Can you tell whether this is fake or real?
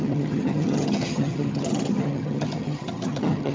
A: fake